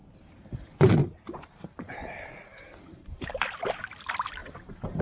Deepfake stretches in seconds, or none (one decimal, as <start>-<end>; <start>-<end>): 0.0-0.9; 2.5-3.3; 4.4-5.0